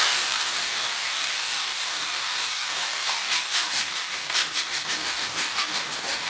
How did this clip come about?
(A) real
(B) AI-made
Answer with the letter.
B